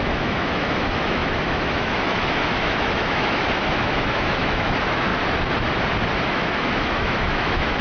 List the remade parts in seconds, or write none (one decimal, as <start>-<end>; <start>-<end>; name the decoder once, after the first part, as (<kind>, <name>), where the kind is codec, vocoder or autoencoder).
0.0-5.1 (autoencoder, DAC-VAE); 6.3-7.8